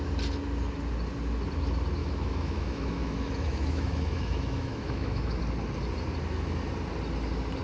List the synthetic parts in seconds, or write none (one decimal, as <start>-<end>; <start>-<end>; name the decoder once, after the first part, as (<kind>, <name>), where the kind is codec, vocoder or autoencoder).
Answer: 2.0-5.4 (autoencoder, DAC-VAE)